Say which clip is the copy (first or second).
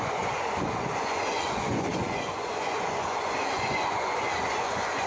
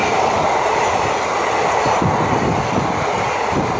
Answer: first